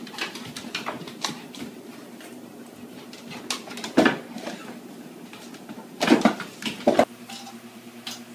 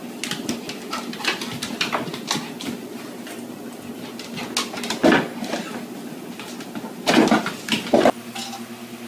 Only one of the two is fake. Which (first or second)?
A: first